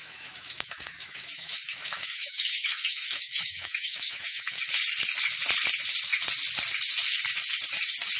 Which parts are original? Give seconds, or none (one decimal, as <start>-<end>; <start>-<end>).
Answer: 4.7-8.2